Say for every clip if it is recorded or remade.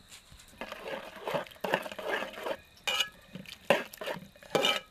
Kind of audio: recorded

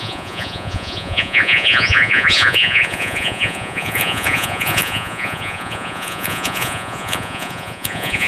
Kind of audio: remade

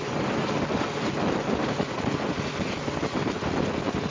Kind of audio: recorded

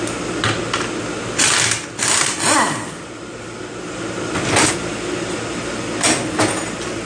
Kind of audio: recorded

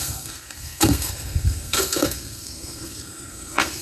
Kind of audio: remade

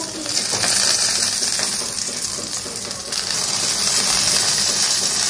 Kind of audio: remade